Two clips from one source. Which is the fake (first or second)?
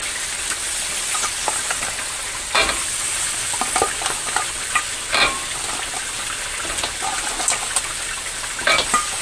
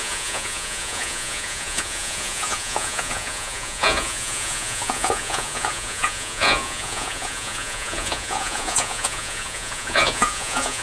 second